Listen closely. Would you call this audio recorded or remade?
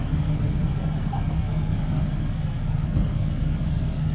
remade